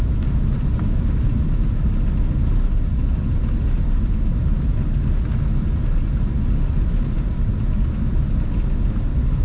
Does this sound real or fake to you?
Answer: real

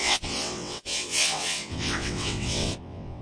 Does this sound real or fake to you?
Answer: fake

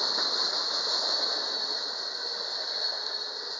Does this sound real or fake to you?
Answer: real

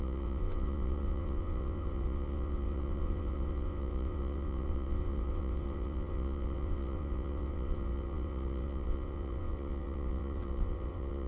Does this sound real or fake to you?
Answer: fake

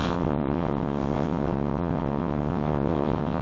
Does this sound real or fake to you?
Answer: fake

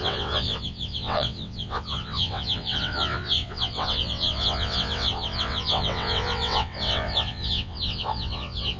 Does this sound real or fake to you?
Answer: fake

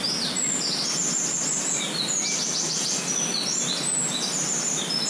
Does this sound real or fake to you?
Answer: real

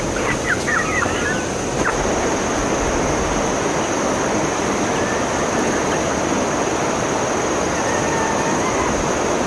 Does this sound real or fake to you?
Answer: real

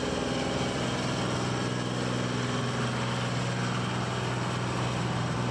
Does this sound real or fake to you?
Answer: real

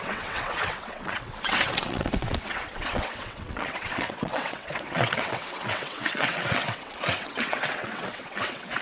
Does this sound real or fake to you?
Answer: fake